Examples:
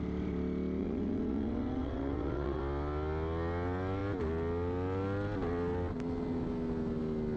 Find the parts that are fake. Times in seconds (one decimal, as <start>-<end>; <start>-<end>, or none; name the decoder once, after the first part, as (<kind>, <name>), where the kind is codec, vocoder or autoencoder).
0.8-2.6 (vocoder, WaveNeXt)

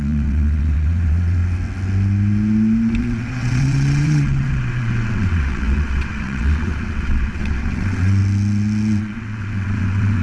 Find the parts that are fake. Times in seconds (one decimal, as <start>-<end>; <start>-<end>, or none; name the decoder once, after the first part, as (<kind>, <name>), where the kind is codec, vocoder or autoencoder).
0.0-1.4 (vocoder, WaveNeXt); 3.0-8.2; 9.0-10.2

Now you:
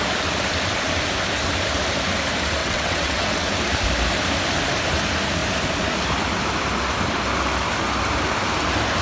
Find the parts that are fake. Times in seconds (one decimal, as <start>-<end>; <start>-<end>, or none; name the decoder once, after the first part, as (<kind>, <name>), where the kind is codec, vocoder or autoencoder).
2.6-3.3 (vocoder, WaveNeXt)